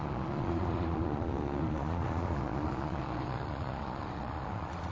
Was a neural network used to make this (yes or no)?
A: yes